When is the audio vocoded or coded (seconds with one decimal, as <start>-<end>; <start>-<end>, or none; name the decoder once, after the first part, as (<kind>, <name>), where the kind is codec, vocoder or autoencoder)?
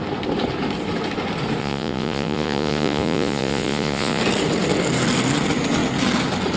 1.6-4.2 (vocoder, Vocos)